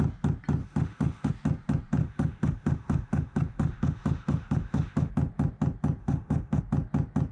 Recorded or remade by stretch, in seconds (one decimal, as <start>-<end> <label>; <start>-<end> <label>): 0.0-0.6 recorded; 0.6-1.3 remade; 1.3-2.0 recorded; 2.0-5.1 remade; 5.1-6.0 recorded; 6.0-6.6 remade; 6.6-7.3 recorded